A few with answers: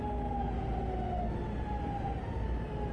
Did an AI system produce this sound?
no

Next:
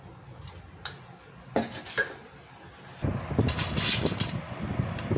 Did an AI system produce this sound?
no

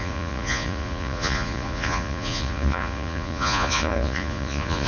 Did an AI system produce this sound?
yes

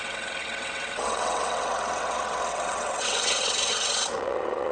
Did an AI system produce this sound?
yes